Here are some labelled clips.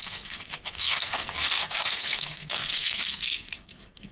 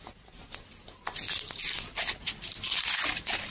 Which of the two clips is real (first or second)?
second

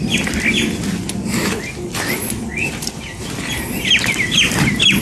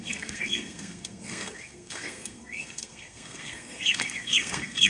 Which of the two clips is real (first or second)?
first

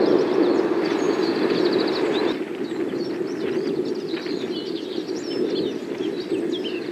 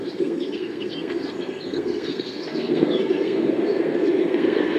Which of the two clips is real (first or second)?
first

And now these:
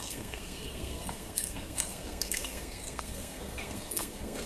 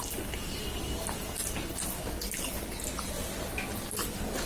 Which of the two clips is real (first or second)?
second